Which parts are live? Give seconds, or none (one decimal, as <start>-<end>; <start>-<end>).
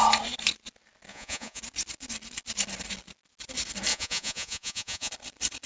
0.0-1.1; 1.6-3.9; 5.1-5.7